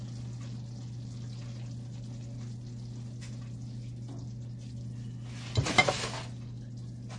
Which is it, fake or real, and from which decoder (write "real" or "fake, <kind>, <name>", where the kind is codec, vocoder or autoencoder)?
real